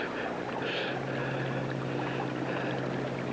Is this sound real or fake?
real